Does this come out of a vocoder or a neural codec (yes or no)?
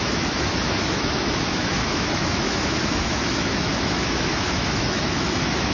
yes